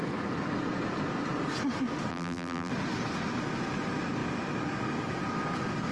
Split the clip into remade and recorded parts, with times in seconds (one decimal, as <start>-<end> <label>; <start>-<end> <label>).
0.0-2.1 recorded; 2.1-2.7 remade; 2.7-5.9 recorded